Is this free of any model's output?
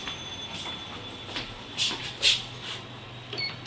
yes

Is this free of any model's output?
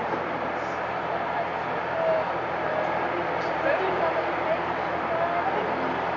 yes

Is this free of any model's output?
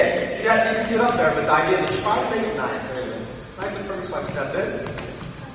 yes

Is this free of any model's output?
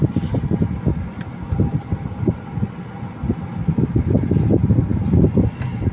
yes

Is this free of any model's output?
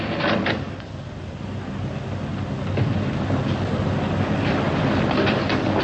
yes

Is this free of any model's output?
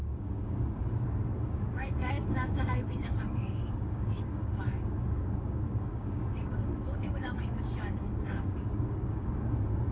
no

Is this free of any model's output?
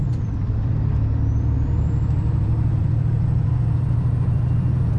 no